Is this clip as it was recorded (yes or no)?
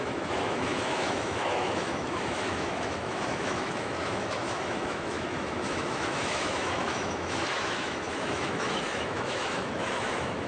no